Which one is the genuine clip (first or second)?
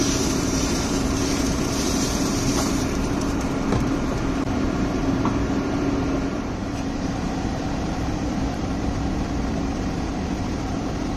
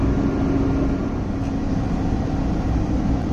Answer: second